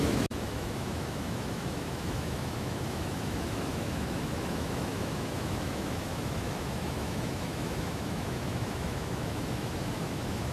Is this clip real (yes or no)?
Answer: no